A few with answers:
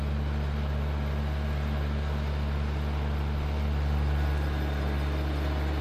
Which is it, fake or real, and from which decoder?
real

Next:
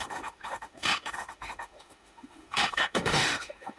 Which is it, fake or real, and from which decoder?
fake, autoencoder, DAC-VAE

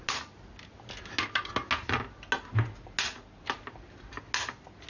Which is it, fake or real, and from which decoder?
real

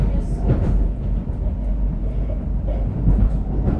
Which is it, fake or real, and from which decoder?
real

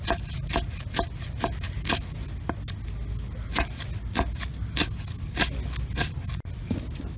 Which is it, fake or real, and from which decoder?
real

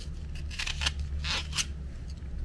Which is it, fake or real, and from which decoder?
real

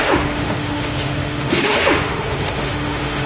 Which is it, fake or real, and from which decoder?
fake, autoencoder, DAC-VAE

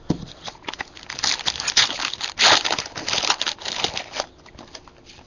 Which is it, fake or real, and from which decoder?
real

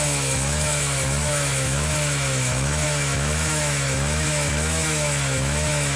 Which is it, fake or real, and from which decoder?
fake, autoencoder, DAC-VAE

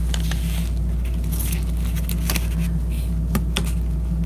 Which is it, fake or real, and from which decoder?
real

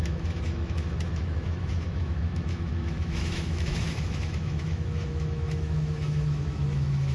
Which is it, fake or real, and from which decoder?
fake, autoencoder, DAC-VAE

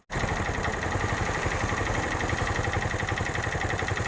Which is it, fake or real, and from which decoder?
real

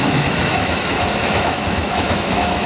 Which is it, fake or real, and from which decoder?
fake, autoencoder, DAC-VAE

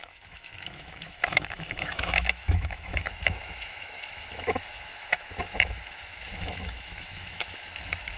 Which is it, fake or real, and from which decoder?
fake, autoencoder, DAC-VAE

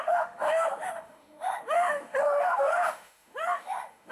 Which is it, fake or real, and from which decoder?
fake, autoencoder, DAC-VAE